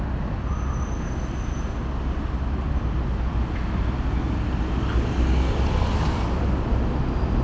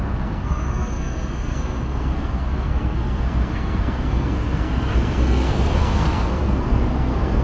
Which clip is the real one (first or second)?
first